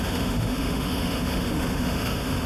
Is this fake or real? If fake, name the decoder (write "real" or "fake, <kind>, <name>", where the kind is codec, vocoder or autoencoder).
fake, autoencoder, DAC-VAE